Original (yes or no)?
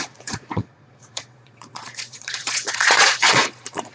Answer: no